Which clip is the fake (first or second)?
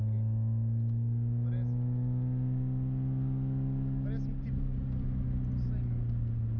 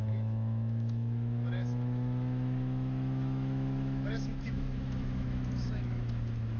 second